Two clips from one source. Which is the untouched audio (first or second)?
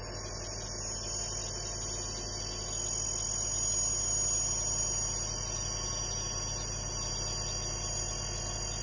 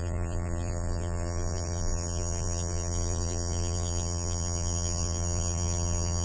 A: first